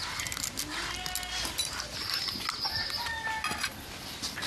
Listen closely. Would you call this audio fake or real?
real